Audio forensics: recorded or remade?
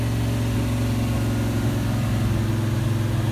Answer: recorded